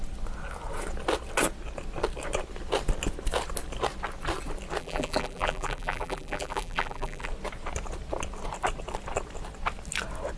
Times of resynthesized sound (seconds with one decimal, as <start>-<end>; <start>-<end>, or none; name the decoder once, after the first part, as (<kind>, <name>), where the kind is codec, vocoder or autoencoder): 4.8-7.3 (vocoder, BigVGAN v2)